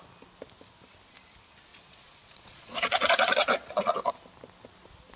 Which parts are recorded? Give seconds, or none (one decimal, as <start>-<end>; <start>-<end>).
0.0-1.7; 4.1-5.2